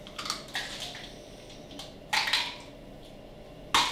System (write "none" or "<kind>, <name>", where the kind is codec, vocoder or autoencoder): none